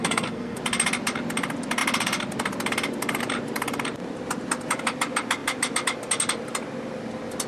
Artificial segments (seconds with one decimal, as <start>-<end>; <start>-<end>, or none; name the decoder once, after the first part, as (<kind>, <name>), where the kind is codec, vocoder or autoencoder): 0.0-0.6 (codec, SNAC)

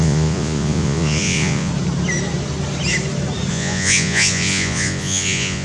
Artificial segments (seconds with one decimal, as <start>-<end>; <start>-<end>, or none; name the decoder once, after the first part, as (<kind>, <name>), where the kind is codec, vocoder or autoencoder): 0.0-1.7 (vocoder, Vocos); 3.5-5.6